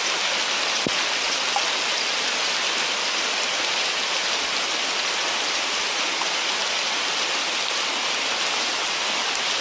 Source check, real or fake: real